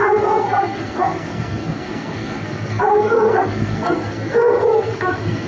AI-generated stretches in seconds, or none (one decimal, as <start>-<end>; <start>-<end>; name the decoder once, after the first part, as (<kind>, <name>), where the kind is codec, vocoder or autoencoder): 0.0-5.5 (codec, SNAC)